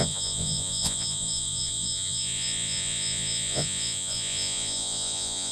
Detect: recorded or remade remade